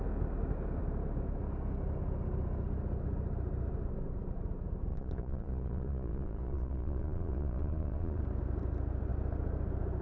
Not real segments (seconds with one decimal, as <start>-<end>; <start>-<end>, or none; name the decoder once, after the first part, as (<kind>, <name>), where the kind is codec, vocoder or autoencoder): 4.9-8.2 (vocoder, Vocos)